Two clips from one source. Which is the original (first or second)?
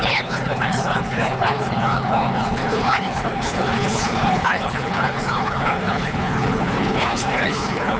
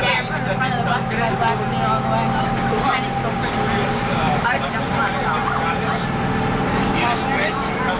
second